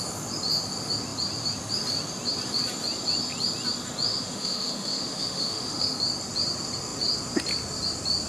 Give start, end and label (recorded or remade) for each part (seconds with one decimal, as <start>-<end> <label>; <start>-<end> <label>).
0.0-4.1 recorded; 4.1-6.0 remade; 6.0-8.3 recorded